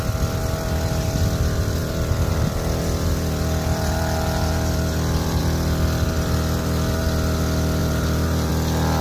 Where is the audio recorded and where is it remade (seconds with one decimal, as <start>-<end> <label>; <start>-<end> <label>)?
0.0-7.8 recorded; 7.8-8.5 remade; 8.5-9.0 recorded